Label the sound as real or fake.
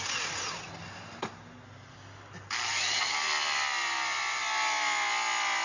real